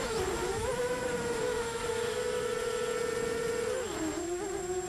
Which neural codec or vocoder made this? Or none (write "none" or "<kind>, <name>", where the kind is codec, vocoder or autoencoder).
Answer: none